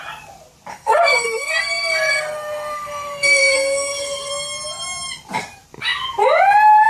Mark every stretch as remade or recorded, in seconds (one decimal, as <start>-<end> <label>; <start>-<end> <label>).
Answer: 0.0-0.7 recorded; 0.7-4.3 remade; 4.3-6.9 recorded